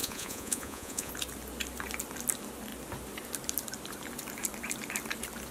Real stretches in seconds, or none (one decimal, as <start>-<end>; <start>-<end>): 1.1-5.5